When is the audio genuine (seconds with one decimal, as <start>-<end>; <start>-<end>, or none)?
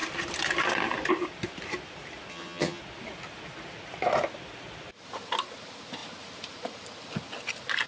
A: 0.0-2.3; 2.8-7.9